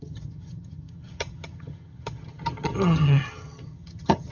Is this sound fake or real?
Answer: fake